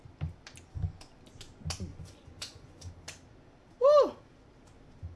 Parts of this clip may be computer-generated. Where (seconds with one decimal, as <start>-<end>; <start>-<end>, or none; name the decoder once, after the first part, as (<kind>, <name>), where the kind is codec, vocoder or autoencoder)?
1.9-2.9 (vocoder, Vocos)